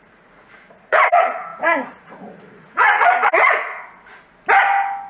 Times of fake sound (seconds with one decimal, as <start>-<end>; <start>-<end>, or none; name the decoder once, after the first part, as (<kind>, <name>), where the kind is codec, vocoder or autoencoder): 0.0-4.2 (vocoder, Vocos)